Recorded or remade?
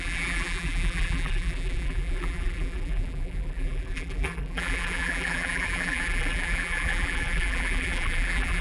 remade